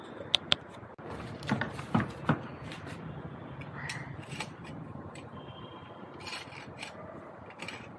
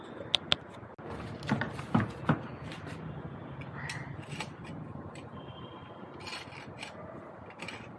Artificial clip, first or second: first